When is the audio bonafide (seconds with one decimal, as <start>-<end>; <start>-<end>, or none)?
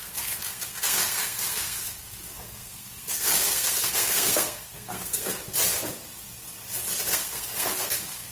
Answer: 5.4-7.1